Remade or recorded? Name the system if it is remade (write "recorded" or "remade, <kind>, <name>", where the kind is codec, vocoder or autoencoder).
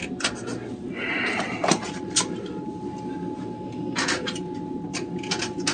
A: recorded